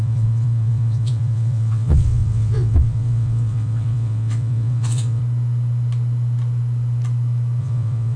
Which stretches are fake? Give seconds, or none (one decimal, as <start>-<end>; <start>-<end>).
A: 0.0-5.2; 7.6-8.2